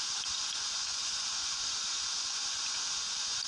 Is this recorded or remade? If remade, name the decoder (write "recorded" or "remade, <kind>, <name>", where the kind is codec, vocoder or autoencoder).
remade, vocoder, Vocos